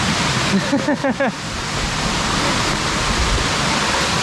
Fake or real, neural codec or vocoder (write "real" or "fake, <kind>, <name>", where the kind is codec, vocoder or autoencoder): real